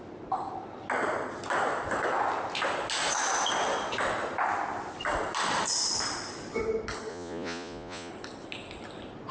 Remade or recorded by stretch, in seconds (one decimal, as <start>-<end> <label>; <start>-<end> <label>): 0.0-7.1 recorded; 7.1-8.1 remade; 8.1-9.3 recorded